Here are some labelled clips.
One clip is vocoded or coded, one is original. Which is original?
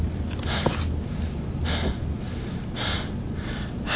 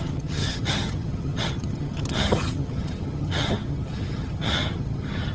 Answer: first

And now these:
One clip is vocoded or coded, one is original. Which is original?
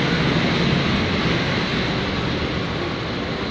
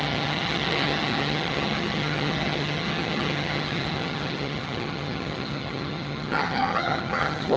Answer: first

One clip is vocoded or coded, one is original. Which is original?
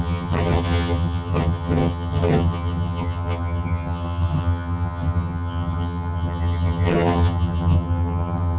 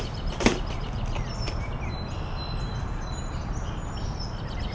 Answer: second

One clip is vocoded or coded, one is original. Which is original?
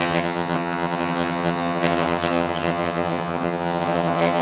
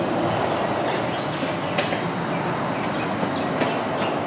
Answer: second